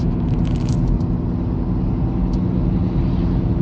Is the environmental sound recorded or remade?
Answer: recorded